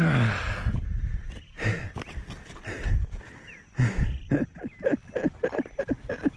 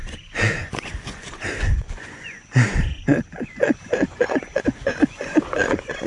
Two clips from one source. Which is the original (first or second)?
first